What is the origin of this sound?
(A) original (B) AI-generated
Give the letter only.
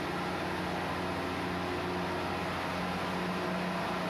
A